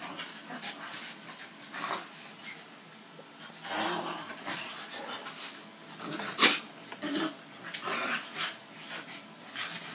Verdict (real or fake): real